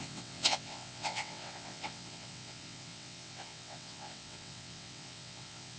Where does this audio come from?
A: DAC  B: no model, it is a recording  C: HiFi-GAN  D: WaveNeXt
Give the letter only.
D